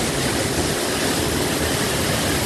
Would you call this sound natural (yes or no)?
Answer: yes